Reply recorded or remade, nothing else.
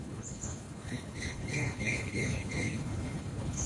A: remade